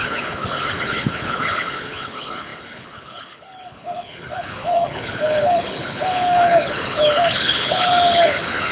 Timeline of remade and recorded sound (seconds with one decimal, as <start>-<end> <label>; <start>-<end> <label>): 0.0-8.7 remade